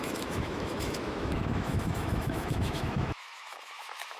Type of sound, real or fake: fake